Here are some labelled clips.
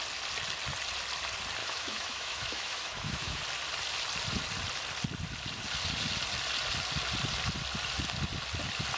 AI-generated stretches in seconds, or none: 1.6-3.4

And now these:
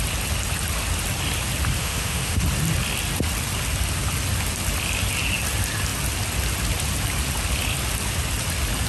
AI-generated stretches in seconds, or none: 1.8-2.4

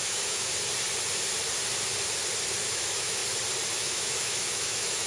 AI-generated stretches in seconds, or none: 0.0-0.5; 2.7-3.2; 3.7-5.1

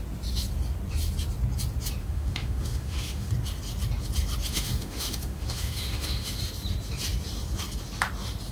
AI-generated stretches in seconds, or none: 2.0-3.3; 4.5-6.4